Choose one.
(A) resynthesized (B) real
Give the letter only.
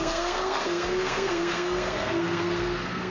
A